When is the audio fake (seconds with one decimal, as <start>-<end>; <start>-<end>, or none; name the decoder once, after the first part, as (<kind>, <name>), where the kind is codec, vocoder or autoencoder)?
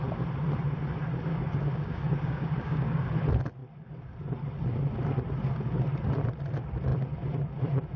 1.3-3.0 (codec, DAC)